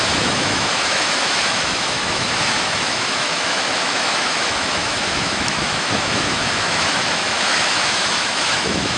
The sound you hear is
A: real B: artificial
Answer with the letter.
B